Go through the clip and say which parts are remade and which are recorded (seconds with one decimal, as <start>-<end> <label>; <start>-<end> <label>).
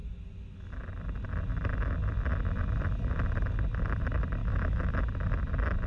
0.0-4.4 recorded; 4.4-5.0 remade; 5.0-5.9 recorded